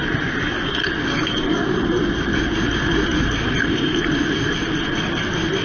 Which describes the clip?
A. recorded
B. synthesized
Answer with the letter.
A